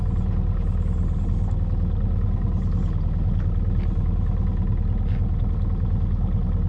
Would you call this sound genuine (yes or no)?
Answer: yes